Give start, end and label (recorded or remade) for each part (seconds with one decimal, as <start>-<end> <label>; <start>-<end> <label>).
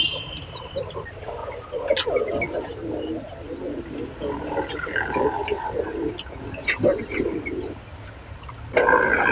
0.0-1.4 remade; 1.4-6.1 recorded; 6.1-9.3 remade